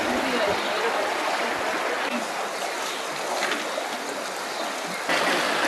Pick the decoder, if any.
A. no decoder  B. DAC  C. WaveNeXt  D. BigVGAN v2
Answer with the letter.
A